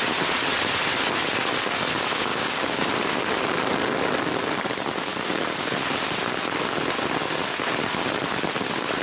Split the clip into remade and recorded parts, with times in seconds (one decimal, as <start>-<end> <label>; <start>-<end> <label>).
0.0-2.3 recorded; 2.3-2.9 remade; 2.9-9.0 recorded